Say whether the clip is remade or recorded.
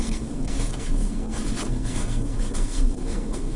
remade